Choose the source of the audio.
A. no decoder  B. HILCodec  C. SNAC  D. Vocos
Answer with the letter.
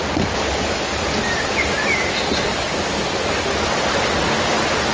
A